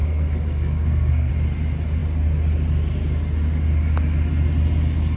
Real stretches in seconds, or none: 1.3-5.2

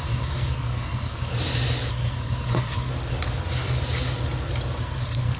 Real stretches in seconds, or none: 1.3-1.9; 2.9-4.8

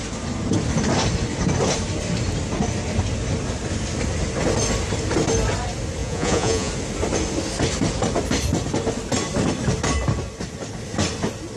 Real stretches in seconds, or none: 0.0-6.0; 6.7-11.6

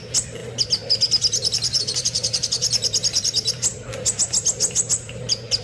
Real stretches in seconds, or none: 0.0-5.6